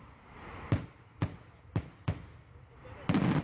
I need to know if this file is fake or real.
real